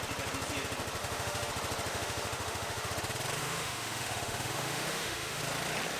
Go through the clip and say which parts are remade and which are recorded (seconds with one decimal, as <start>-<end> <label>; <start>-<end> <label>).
0.0-1.0 recorded; 1.0-1.5 remade; 1.5-1.9 recorded; 1.9-2.9 remade; 2.9-3.4 recorded; 3.4-5.4 remade; 5.4-6.0 recorded